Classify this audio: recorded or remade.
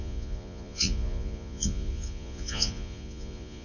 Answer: remade